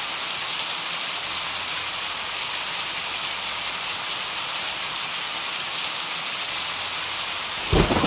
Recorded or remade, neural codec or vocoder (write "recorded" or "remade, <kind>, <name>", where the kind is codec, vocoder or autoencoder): recorded